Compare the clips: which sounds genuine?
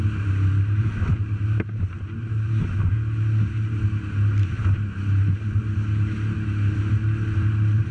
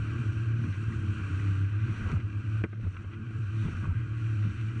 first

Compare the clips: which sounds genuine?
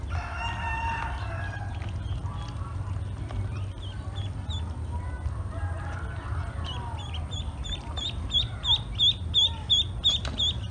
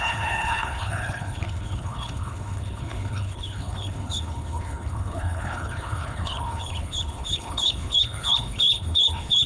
first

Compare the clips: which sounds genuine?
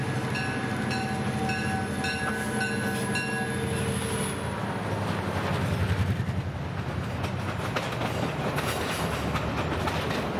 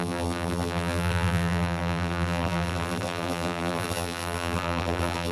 first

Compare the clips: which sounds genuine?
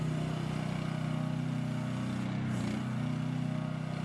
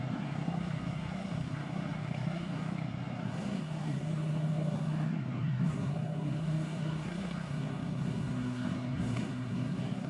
first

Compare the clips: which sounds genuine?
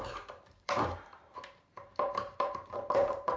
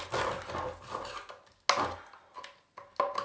second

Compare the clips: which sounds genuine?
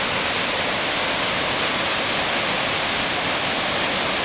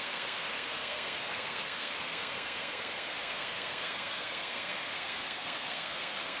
first